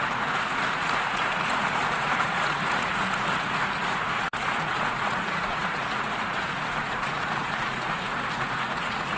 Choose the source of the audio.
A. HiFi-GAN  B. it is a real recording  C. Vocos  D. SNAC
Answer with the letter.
C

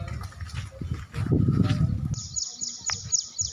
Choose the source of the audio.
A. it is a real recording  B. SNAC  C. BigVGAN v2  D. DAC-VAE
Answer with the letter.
A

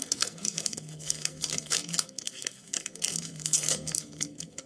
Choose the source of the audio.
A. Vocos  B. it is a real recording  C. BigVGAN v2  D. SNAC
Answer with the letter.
D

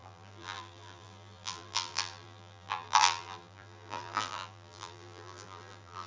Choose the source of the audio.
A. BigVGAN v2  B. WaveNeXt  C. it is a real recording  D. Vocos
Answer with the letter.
A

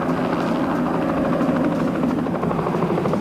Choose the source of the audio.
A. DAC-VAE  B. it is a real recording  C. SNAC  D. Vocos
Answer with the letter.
B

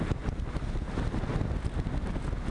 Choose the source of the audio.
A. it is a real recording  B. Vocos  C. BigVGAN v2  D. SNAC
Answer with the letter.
A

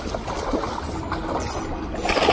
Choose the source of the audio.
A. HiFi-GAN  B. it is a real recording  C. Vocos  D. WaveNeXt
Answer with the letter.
B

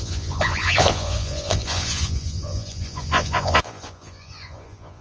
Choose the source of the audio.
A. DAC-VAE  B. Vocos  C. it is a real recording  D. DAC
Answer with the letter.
B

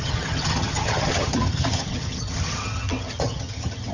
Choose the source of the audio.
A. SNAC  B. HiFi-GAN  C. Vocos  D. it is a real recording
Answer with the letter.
B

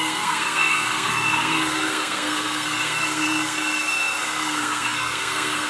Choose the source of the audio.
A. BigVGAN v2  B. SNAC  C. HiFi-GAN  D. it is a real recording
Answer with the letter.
B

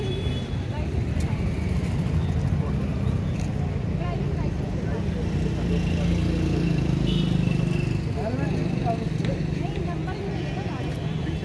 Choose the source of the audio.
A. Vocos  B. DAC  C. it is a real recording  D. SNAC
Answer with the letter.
C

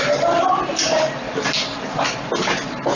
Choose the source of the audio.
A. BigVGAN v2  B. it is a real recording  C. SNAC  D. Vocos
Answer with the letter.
B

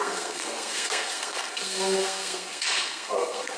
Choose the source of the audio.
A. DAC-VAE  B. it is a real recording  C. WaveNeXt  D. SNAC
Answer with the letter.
D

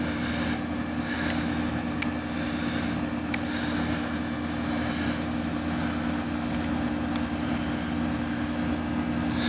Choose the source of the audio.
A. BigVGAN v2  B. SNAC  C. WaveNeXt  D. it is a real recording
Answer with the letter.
D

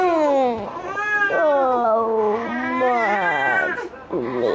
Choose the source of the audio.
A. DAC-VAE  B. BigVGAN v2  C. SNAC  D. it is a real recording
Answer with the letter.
D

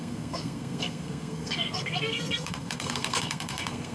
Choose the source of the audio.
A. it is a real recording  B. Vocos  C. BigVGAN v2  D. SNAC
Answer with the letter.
D